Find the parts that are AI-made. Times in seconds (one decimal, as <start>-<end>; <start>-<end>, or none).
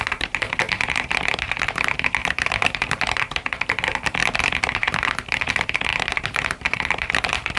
2.2-3.0; 5.9-7.1